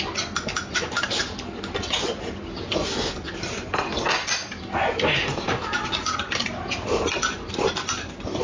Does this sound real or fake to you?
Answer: real